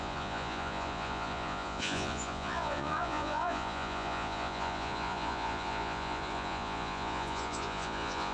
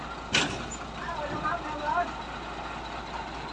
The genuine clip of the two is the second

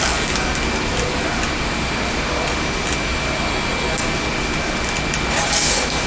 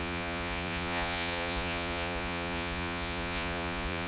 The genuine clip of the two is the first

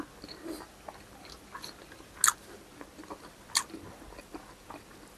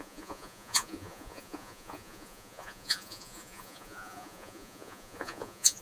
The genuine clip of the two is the first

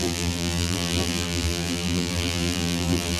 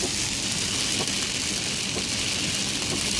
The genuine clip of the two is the second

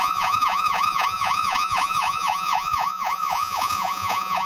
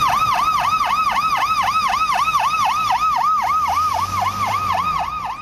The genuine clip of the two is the second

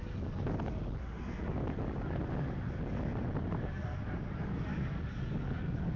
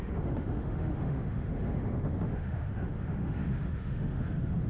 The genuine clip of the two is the first